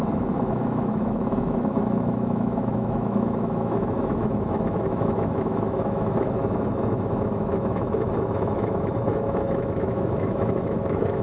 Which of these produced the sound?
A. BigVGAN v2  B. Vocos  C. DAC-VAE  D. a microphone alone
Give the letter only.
C